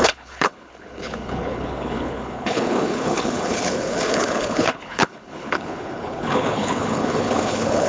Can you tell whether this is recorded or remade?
remade